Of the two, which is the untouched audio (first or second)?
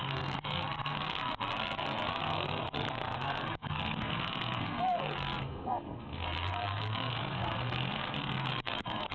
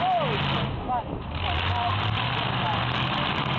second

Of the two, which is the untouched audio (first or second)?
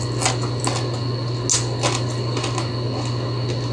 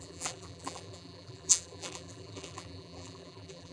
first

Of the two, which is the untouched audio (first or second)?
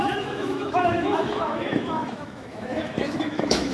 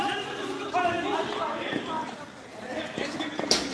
second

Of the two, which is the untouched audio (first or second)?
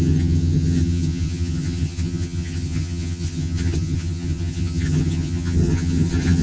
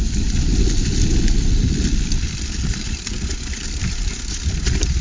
second